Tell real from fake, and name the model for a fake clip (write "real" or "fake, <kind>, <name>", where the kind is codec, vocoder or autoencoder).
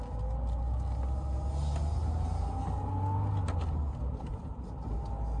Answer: real